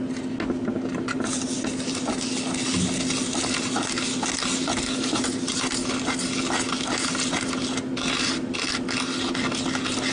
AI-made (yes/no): no